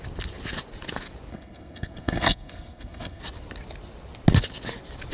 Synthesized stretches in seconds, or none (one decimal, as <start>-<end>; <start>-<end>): 1.3-3.2